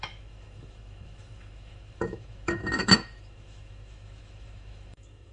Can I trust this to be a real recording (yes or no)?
no